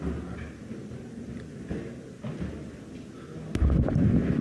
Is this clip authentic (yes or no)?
yes